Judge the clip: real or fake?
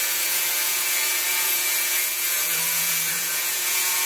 fake